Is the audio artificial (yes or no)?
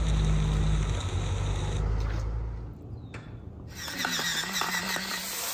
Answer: no